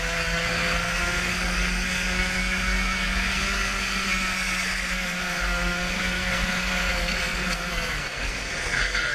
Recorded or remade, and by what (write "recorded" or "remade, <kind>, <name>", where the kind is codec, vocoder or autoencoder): remade, codec, SNAC